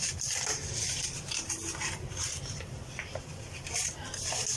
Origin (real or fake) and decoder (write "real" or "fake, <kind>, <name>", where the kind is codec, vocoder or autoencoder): fake, vocoder, BigVGAN v2